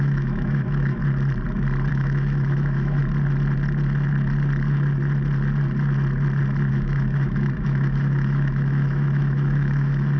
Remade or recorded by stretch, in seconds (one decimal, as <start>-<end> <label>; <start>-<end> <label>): 0.0-1.0 remade; 1.0-1.9 recorded; 1.9-3.0 remade; 3.0-6.7 recorded; 6.7-10.2 remade

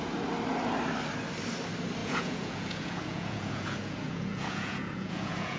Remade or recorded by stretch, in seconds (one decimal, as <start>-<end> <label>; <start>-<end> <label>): 0.0-2.0 recorded; 2.0-5.6 remade